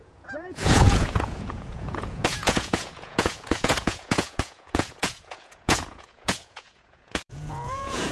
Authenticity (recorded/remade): remade